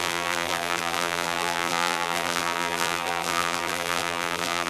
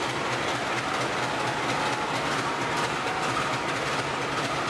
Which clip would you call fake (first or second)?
first